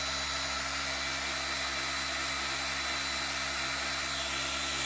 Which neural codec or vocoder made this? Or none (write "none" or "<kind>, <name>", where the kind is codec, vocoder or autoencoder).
none